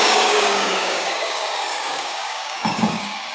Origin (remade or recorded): remade